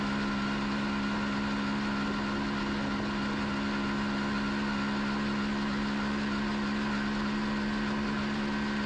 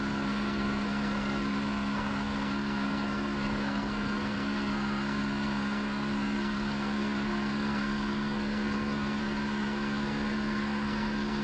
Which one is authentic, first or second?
first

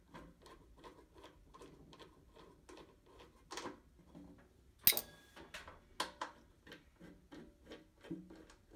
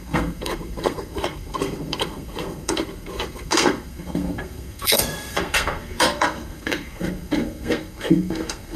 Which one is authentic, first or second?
first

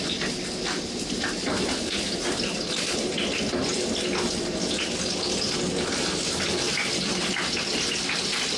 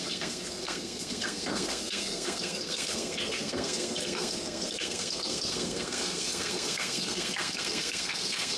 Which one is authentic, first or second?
first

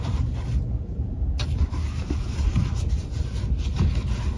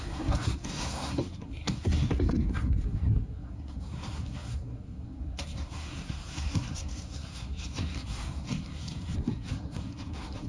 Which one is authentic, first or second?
first